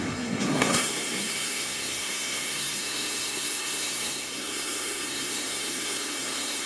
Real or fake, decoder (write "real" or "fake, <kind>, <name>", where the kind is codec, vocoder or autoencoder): fake, codec, SNAC